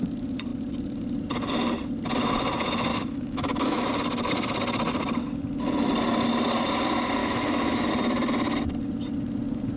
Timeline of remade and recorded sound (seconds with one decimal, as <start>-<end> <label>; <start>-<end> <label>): 0.0-2.9 recorded; 2.9-3.8 remade; 3.8-7.2 recorded; 7.2-7.9 remade; 7.9-9.8 recorded